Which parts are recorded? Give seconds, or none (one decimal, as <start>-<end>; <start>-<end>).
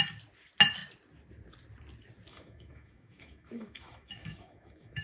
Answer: 0.0-2.3